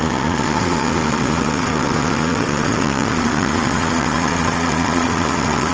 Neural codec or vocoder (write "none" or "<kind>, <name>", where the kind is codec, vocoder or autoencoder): vocoder, Vocos